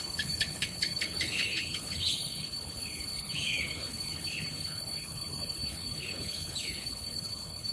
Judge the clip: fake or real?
fake